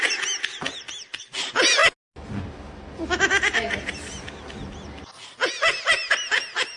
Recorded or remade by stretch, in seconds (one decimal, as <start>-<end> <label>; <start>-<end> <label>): 0.0-6.8 recorded

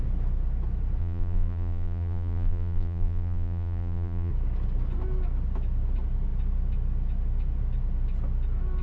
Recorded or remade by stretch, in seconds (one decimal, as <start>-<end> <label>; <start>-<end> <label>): 0.0-1.0 recorded; 1.0-4.3 remade; 4.3-8.8 recorded

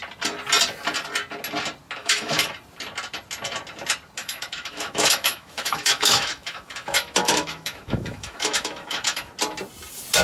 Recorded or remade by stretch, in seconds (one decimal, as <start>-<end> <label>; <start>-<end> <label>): 0.0-2.0 recorded; 2.0-2.5 remade; 2.5-4.2 recorded; 4.2-9.3 remade; 9.3-10.2 recorded

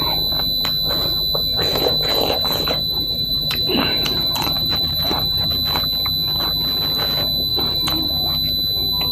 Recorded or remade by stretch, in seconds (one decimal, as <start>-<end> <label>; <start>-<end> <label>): 0.0-1.5 recorded; 1.5-5.5 remade; 5.5-7.5 recorded; 7.5-8.1 remade; 8.1-9.1 recorded

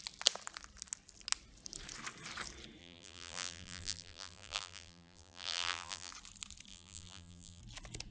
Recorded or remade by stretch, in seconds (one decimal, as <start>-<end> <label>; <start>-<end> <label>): 0.0-2.8 recorded; 2.8-6.1 remade; 6.1-6.7 recorded; 6.7-7.6 remade; 7.6-8.1 recorded